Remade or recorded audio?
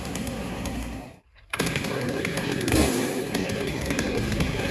remade